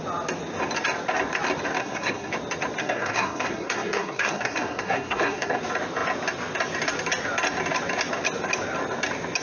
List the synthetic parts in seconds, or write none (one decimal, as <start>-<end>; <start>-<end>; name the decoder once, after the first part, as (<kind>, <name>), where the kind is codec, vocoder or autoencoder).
1.8-2.3 (codec, SNAC); 2.8-5.6